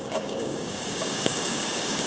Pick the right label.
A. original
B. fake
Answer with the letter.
B